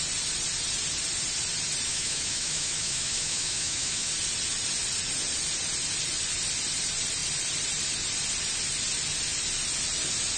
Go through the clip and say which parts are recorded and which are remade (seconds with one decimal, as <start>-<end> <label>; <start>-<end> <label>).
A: 0.0-1.9 recorded; 1.9-4.1 remade; 4.1-10.4 recorded